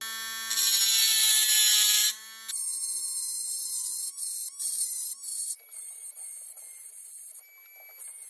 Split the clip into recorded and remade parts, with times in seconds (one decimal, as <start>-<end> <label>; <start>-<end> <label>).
0.0-8.3 recorded

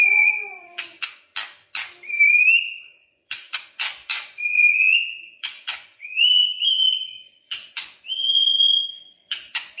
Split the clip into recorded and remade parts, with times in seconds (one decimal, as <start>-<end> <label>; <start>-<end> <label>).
0.0-1.3 remade; 1.3-3.0 recorded; 3.0-9.8 remade